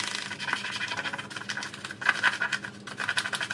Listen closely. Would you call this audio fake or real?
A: real